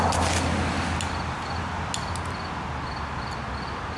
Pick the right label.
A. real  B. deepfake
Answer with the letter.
A